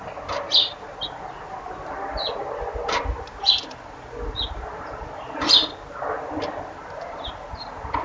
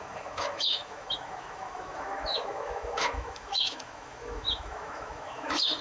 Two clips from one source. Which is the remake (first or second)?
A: second